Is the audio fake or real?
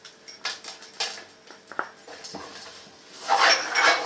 real